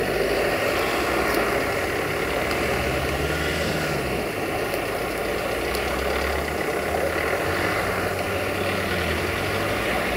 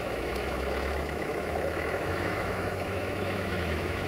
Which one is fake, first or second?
second